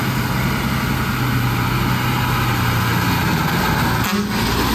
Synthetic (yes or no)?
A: no